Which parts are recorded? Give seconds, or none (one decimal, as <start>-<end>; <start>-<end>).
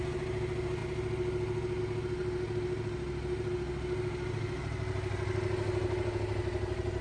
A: 0.0-7.0